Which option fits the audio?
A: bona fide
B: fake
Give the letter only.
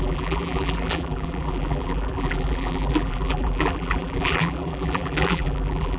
B